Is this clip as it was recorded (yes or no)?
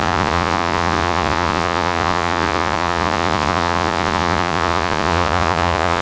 no